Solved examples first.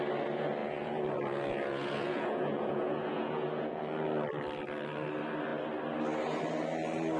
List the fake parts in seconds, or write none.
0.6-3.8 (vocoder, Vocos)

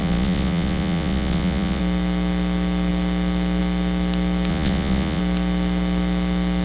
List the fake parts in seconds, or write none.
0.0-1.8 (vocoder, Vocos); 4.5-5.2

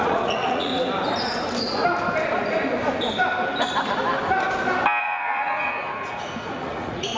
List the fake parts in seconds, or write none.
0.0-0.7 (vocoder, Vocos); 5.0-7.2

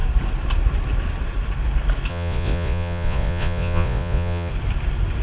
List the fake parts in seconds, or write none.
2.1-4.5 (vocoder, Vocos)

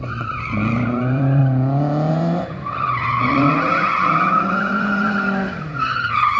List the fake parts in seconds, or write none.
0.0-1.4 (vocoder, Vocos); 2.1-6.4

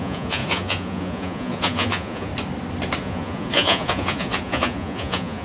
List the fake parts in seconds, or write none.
0.0-2.3 (vocoder, Vocos); 3.0-5.4